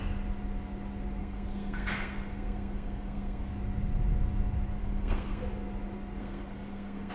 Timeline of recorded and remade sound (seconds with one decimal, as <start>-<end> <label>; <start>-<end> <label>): 0.0-1.2 recorded; 1.2-3.5 remade; 3.5-4.8 recorded; 4.8-5.4 remade; 5.4-6.2 recorded; 6.2-7.1 remade